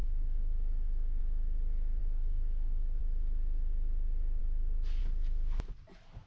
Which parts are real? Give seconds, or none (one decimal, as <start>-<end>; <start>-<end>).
1.2-2.0; 3.0-6.3

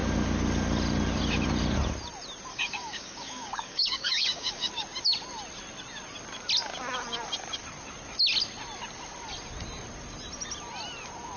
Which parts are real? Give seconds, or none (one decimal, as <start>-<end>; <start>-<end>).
0.0-2.5; 4.7-11.4